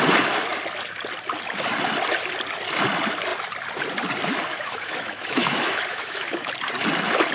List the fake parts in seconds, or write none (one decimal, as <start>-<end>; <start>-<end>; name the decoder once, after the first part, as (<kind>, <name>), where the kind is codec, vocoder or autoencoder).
4.5-6.5 (autoencoder, DAC-VAE)